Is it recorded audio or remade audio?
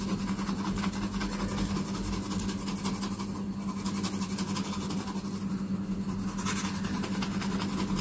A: recorded